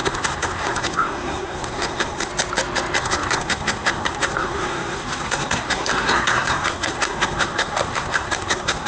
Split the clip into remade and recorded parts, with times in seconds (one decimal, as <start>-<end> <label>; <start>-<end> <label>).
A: 0.0-2.3 remade; 2.3-3.0 recorded; 3.0-8.9 remade